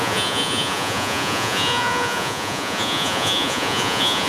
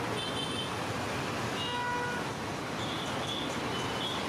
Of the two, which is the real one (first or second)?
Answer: second